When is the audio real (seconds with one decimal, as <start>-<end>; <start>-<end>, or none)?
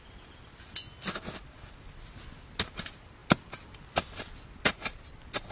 0.0-5.5